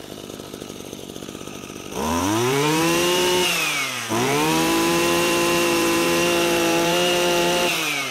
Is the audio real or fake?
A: fake